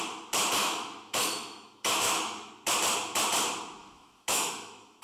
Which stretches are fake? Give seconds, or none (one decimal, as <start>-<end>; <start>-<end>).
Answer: 0.6-2.5; 3.8-5.0